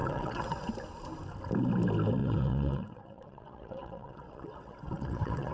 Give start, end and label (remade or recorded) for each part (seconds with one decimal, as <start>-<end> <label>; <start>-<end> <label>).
0.0-0.7 remade; 0.7-2.2 recorded; 2.2-5.5 remade